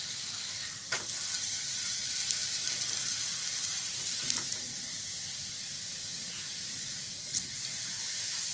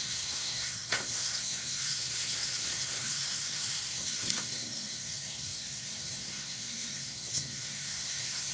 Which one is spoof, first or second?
second